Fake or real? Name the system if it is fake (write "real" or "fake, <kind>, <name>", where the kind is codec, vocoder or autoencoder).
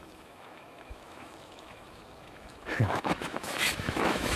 fake, autoencoder, DAC-VAE